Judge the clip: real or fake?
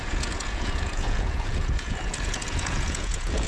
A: fake